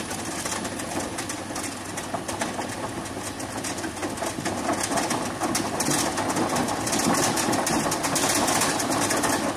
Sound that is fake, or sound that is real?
real